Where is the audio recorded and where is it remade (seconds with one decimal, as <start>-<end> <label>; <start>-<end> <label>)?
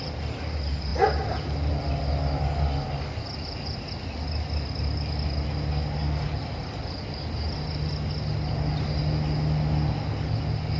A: 0.0-10.8 recorded